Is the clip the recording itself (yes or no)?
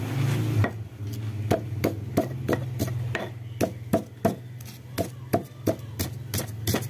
yes